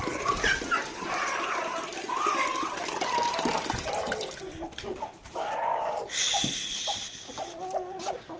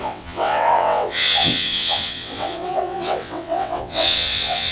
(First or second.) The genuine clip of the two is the first